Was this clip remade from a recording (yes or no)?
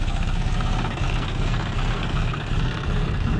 yes